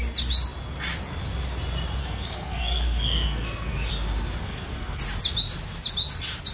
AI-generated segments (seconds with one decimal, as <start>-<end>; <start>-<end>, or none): 2.0-3.9; 4.4-5.0